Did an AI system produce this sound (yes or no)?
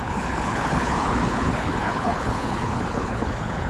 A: yes